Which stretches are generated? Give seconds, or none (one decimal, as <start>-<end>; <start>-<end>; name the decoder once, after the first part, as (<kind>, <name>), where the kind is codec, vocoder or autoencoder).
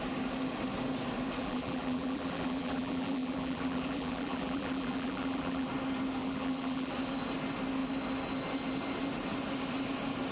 1.4-5.7 (vocoder, BigVGAN v2); 6.2-6.9